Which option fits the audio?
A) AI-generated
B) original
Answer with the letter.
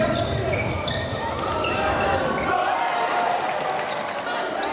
B